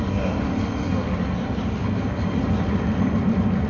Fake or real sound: real